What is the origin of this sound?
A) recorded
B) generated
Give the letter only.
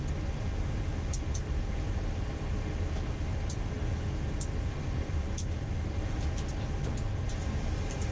A